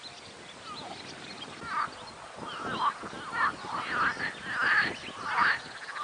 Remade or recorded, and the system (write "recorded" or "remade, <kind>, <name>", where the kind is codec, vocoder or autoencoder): recorded